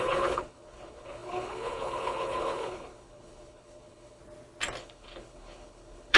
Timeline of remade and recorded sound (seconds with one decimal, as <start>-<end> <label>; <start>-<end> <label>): 0.0-4.2 remade; 4.2-4.8 recorded; 4.8-6.2 remade